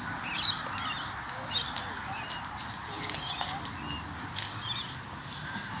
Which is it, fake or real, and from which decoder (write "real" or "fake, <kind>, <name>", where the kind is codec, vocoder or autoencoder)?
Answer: real